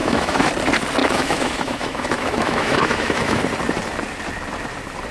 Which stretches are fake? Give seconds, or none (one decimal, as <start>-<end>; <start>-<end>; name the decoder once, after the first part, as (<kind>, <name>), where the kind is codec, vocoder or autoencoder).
0.0-0.5 (autoencoder, DAC-VAE); 1.0-3.4

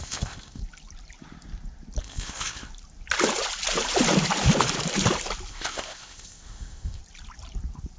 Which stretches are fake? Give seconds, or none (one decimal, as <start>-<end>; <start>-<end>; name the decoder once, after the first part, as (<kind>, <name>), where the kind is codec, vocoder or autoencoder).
0.0-0.6 (codec, ZipCodec); 2.0-2.7; 5.5-7.0